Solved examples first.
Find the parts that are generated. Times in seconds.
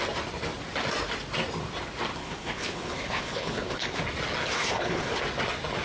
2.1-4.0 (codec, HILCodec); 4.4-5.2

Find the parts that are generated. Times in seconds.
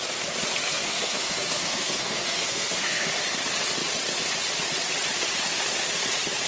0.7-3.1 (codec, SNAC)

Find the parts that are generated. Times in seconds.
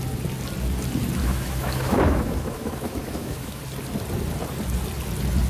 1.2-3.6 (autoencoder, DAC-VAE)